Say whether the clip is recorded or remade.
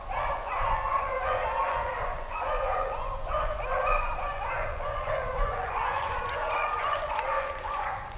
remade